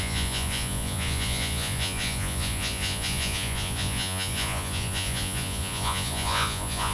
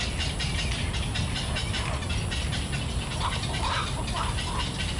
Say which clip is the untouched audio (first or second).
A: second